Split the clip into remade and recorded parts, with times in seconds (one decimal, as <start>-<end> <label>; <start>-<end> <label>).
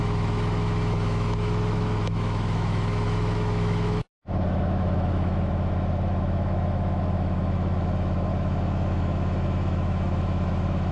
0.0-10.9 remade